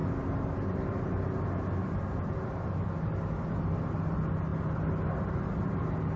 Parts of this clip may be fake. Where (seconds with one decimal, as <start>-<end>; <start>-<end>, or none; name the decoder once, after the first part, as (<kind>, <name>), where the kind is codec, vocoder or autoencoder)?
none